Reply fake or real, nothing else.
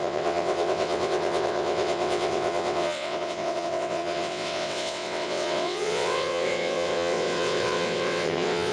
fake